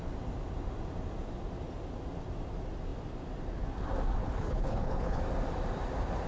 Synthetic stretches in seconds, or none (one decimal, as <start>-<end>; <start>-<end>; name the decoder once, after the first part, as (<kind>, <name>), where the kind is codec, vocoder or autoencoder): 4.2-5.2 (codec, HILCodec)